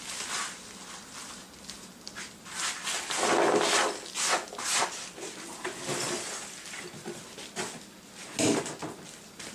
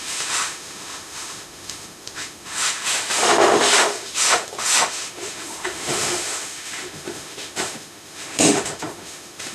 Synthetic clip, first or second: second